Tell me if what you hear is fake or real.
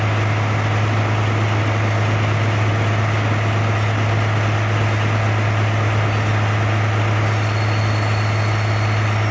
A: real